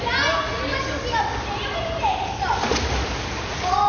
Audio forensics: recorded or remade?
recorded